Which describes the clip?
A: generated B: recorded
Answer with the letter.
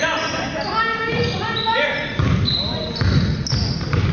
B